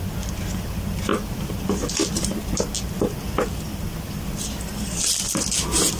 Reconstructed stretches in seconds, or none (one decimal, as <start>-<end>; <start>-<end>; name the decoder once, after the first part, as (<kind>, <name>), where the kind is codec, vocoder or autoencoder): none